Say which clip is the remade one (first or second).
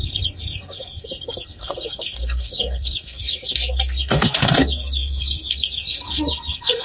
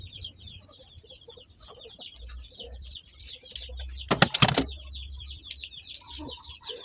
first